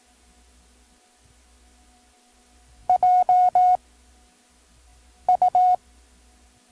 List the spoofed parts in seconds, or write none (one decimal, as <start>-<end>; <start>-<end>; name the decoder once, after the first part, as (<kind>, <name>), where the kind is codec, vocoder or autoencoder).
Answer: none